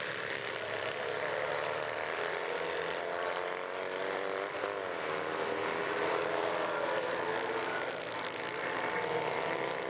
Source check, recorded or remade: remade